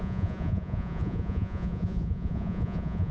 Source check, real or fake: fake